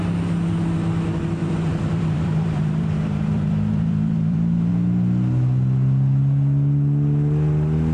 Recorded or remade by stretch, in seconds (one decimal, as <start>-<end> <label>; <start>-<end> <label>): 0.0-1.4 recorded; 1.4-4.7 remade; 4.7-7.9 recorded